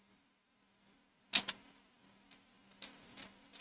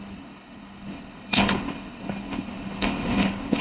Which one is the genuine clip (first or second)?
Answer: first